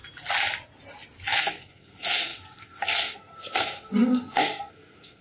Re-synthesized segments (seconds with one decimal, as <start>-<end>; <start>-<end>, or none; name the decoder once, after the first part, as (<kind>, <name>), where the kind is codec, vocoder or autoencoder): 1.4-5.2 (codec, SNAC)